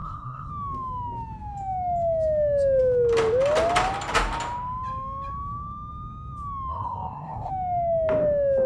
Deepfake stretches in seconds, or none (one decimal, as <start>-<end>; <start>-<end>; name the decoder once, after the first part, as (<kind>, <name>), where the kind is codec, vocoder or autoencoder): 0.0-0.5 (codec, SNAC); 6.7-7.5